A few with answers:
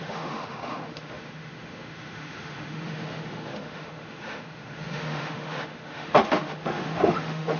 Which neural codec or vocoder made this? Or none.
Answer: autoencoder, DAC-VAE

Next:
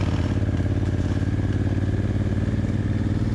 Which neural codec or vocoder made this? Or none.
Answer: none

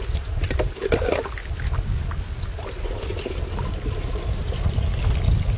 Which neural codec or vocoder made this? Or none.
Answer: none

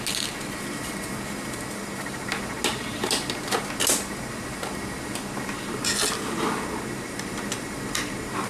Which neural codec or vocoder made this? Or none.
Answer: none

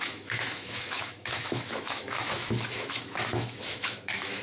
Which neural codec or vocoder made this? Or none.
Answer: autoencoder, DAC-VAE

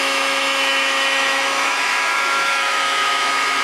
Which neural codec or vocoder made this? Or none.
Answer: autoencoder, DAC-VAE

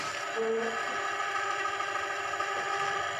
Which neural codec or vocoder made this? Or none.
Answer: none